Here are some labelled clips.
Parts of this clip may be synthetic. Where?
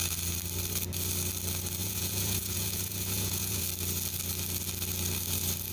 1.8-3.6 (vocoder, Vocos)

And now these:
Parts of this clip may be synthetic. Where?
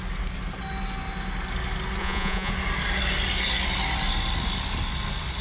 2.0-2.5 (vocoder, Vocos)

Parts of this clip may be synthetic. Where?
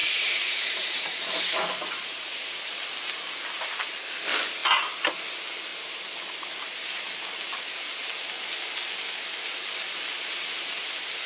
0.0-2.8 (vocoder, Vocos)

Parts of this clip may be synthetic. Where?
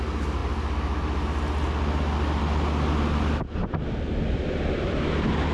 none